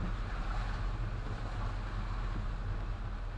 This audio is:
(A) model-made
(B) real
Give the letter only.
B